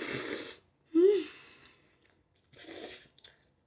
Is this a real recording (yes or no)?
yes